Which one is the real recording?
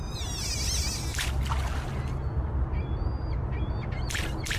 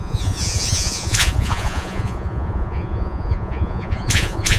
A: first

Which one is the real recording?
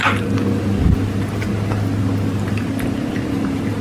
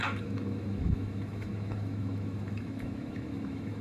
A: first